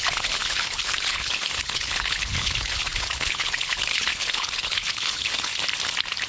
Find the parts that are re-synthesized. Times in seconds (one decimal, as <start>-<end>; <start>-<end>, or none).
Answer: 0.0-5.5